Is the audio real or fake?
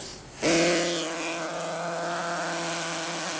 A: real